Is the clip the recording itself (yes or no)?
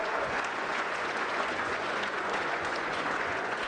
no